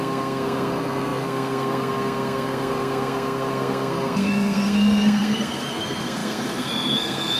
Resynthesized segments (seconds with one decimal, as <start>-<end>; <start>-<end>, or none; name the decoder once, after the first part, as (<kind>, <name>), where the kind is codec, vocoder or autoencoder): 0.0-7.4 (codec, SNAC)